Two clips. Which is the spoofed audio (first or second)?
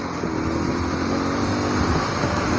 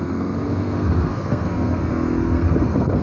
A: second